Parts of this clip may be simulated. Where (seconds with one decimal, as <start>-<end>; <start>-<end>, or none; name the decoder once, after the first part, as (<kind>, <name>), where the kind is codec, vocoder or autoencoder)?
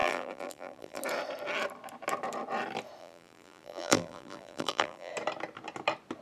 0.0-1.0 (vocoder, BigVGAN v2); 3.0-5.1